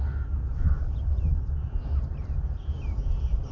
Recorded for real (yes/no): no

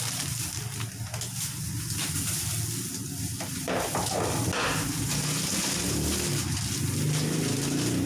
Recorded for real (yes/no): yes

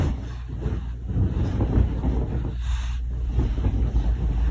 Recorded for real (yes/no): yes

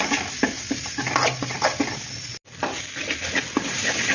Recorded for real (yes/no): yes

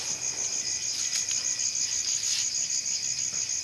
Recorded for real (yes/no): yes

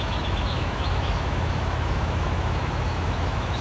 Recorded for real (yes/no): no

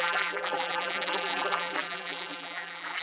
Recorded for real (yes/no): no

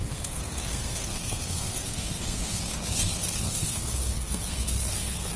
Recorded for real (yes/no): no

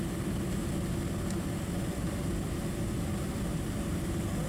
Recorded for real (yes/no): yes